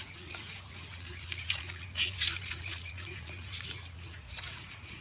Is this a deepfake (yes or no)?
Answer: yes